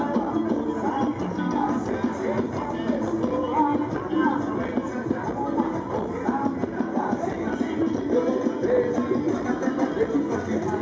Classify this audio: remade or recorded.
recorded